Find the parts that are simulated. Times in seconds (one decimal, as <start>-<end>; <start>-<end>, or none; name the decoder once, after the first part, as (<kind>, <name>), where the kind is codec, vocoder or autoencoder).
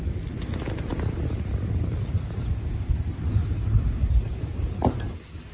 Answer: none